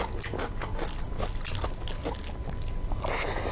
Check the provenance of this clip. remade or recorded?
recorded